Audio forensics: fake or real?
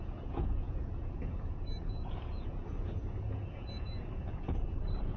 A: fake